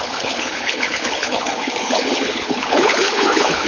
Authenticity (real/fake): fake